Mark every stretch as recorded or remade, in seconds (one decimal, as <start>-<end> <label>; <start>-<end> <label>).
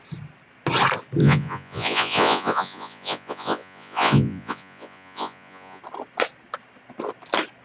0.0-1.2 recorded; 1.2-5.8 remade; 5.8-7.6 recorded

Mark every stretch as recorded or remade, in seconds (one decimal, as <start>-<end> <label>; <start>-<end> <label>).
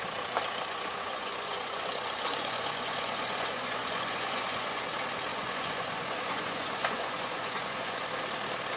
0.0-0.7 recorded; 0.7-4.8 remade; 4.8-5.3 recorded; 5.3-8.0 remade; 8.0-8.8 recorded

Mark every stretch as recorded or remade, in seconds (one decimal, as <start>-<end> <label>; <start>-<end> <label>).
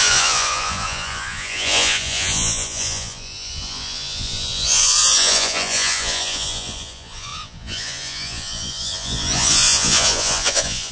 0.0-10.9 remade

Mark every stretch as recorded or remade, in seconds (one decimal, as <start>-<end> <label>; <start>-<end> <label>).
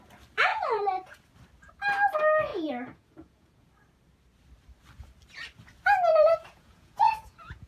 0.0-0.5 recorded; 0.5-1.2 remade; 1.2-2.5 recorded; 2.5-3.7 remade; 3.7-6.1 recorded; 6.1-7.7 remade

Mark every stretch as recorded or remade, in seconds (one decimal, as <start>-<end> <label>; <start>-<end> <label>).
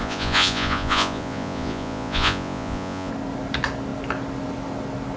0.0-3.1 remade; 3.1-5.2 recorded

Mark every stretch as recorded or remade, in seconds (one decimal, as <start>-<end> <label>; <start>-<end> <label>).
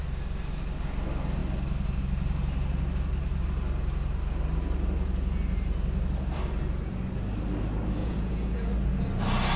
0.0-8.0 recorded; 8.0-8.7 remade; 8.7-9.6 recorded